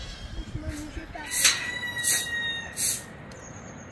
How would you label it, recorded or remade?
recorded